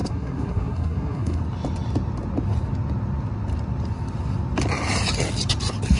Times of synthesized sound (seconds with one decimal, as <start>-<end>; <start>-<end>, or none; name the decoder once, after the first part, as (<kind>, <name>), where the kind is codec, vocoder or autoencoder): 0.0-1.4 (codec, SNAC)